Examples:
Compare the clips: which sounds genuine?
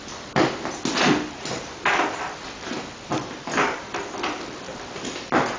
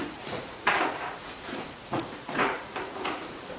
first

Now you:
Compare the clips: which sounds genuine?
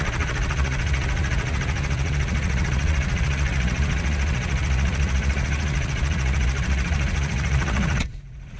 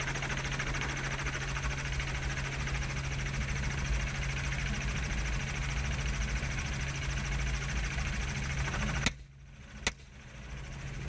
second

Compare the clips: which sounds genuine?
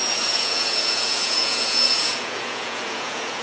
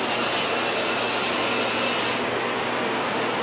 second